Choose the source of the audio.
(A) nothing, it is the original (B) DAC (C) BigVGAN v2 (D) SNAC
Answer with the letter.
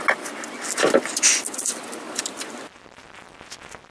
A